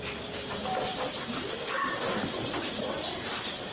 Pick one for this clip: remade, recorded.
remade